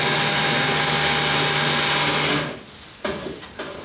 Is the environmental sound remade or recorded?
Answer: recorded